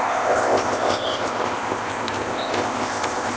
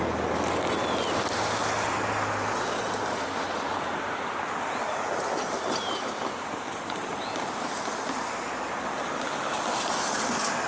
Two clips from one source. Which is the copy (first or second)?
first